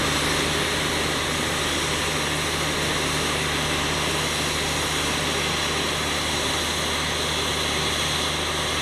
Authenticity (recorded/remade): recorded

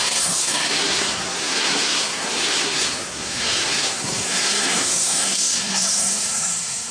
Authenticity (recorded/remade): remade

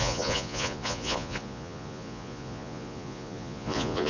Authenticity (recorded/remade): remade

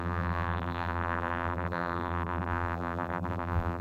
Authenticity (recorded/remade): remade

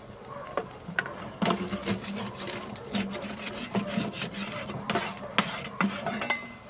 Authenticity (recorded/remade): recorded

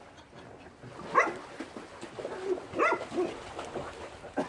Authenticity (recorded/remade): recorded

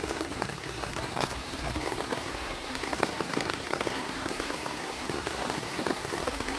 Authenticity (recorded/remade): remade